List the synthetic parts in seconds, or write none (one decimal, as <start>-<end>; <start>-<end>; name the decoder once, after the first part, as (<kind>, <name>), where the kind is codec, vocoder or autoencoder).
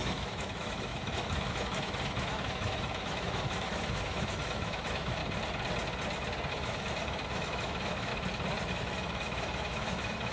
0.0-5.2 (autoencoder, DAC-VAE); 6.5-8.1; 8.7-10.3